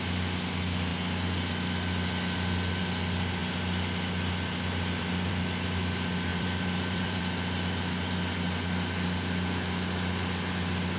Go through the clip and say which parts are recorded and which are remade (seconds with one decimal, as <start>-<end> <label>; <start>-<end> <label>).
0.0-6.3 recorded; 6.3-7.2 remade; 7.2-11.0 recorded